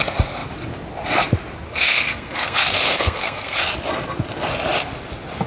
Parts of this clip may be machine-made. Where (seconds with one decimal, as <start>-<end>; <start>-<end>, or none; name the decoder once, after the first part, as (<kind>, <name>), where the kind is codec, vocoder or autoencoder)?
1.7-3.6 (codec, SNAC)